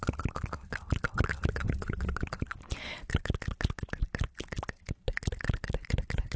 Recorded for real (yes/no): yes